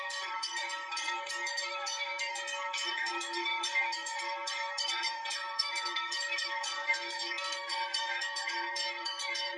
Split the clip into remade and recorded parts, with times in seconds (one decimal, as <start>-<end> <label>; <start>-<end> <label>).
0.0-9.6 remade